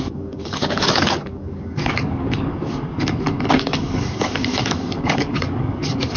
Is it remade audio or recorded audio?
remade